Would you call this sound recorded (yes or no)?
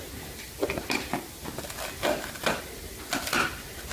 yes